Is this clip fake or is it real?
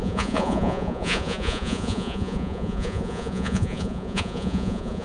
fake